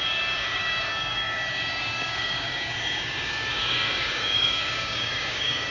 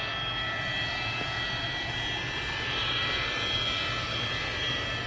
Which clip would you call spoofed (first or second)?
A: first